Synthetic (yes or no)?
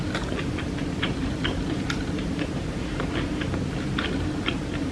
no